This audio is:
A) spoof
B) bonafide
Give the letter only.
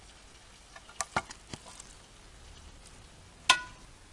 B